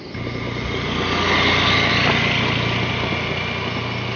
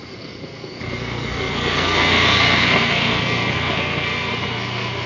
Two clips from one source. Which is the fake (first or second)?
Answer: second